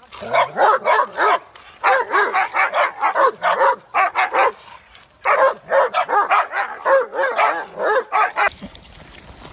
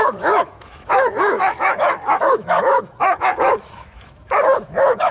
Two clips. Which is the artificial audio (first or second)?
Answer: second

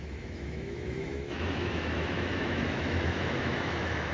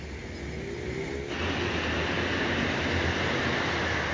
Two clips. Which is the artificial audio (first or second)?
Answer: first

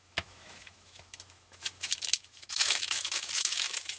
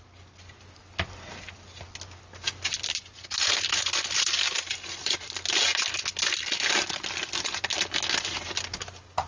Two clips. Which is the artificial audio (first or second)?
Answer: first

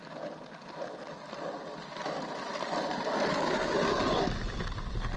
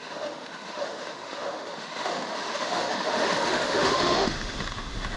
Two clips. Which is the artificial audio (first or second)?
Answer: second